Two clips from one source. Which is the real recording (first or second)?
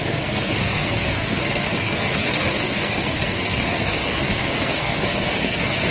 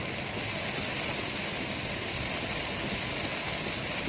second